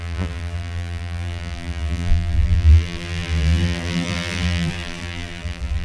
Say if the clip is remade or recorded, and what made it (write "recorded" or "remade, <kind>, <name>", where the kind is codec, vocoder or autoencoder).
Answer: remade, vocoder, BigVGAN v2